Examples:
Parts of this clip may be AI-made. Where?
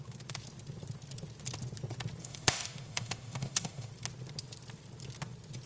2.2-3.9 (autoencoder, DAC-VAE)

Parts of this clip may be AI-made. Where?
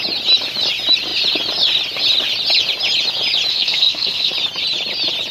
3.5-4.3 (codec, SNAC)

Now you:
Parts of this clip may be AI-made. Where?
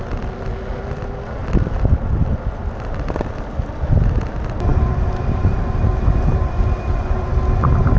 none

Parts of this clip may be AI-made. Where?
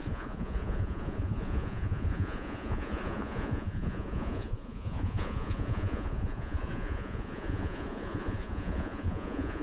0.0-9.6 (vocoder, Vocos)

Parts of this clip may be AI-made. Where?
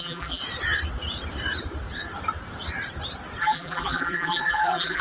0.0-0.4 (vocoder, BigVGAN v2); 3.4-5.0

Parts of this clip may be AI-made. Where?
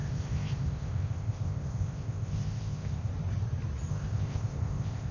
0.0-3.1 (codec, ZipCodec); 3.9-5.1